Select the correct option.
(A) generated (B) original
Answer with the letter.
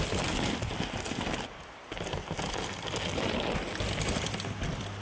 B